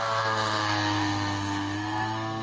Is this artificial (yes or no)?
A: yes